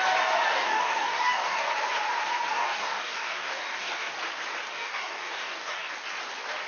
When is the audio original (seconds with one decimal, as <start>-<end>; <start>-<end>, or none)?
0.0-0.5; 1.7-2.5; 4.1-4.7; 5.9-6.7